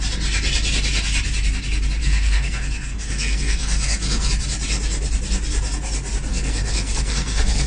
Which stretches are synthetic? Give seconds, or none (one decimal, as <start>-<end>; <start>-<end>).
2.0-4.3; 6.3-7.7